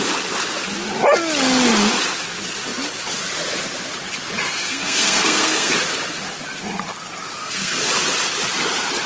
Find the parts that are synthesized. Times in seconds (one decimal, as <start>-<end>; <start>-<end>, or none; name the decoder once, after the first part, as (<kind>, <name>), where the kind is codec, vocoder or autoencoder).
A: 4.7-5.7 (codec, SNAC); 7.4-7.9